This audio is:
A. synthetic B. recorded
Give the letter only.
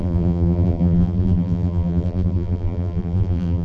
A